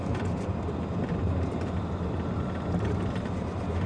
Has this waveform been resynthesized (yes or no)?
no